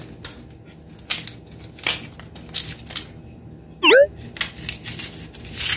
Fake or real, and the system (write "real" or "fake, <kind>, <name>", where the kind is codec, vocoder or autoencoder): real